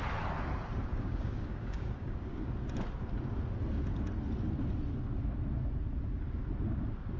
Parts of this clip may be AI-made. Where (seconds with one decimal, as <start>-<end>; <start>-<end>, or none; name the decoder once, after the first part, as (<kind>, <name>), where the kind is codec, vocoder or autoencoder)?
0.9-2.5 (codec, DAC)